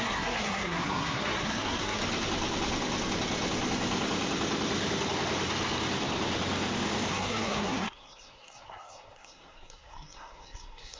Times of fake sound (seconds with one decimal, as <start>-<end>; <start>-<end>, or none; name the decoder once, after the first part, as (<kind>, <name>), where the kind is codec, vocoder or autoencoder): 0.0-2.0 (codec, SNAC); 7.1-11.0

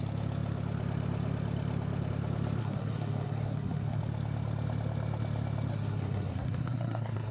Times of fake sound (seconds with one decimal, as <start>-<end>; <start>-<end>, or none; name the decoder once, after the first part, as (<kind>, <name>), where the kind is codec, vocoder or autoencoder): 2.6-4.0 (codec, SNAC); 5.7-7.3

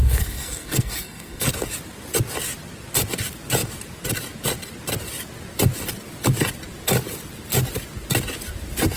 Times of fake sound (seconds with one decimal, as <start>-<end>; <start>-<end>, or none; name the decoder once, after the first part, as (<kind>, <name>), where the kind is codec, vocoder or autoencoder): 0.0-1.5 (codec, SNAC)

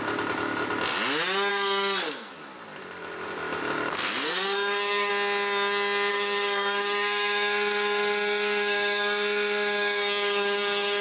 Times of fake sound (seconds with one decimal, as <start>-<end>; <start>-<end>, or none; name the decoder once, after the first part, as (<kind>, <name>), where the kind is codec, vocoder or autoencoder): 1.5-2.3 (codec, SNAC); 3.9-5.1; 6.1-11.0

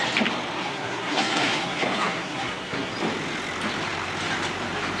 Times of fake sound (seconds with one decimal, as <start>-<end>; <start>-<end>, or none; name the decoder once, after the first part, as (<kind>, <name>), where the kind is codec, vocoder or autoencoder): 0.6-2.9 (codec, SNAC)

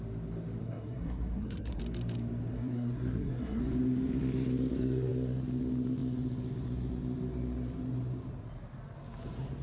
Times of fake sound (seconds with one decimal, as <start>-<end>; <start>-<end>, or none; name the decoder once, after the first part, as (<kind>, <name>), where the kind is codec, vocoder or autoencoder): 0.6-1.8 (codec, SNAC); 2.5-3.6